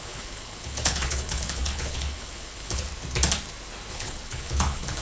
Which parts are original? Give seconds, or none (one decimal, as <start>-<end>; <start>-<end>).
2.9-3.9